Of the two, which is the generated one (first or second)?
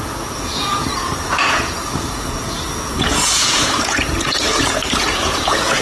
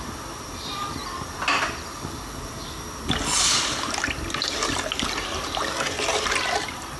first